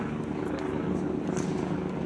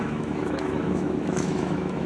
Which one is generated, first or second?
second